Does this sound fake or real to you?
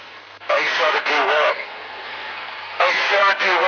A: fake